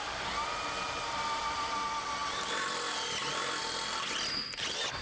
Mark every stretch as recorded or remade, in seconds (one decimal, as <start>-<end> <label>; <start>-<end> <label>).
0.0-5.0 recorded